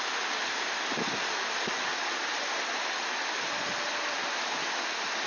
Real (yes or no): yes